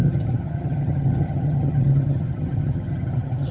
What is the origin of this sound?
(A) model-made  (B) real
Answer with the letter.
A